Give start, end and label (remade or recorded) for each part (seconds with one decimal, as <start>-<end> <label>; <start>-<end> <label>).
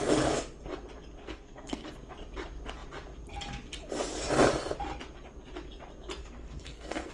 0.0-1.2 recorded; 1.2-1.9 remade; 1.9-6.2 recorded; 6.2-7.1 remade